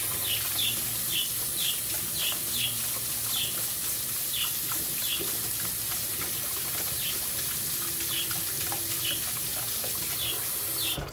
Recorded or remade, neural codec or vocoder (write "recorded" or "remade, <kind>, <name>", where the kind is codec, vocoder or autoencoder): recorded